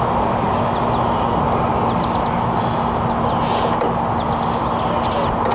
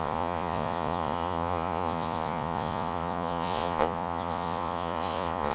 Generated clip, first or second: second